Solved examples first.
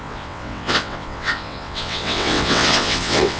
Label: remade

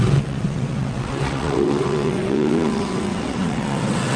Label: remade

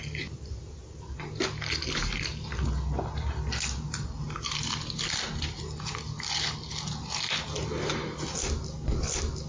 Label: recorded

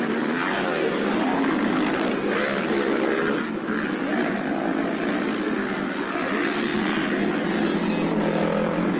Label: recorded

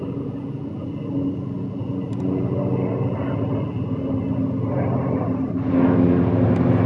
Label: recorded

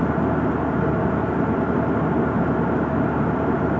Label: recorded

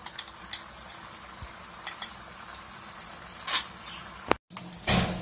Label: recorded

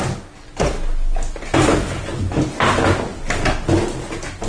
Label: recorded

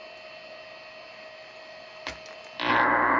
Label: recorded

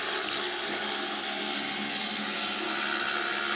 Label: recorded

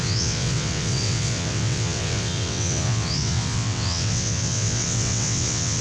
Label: remade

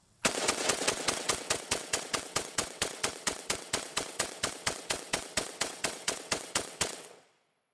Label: remade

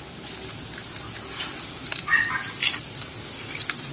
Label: recorded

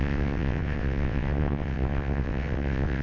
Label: remade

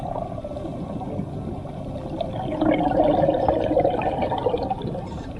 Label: recorded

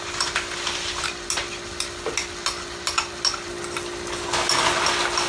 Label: recorded